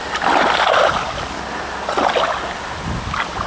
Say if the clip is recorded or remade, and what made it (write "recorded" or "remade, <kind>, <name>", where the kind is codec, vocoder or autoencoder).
recorded